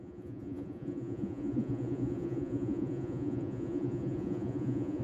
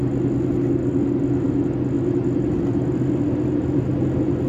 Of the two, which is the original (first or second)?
second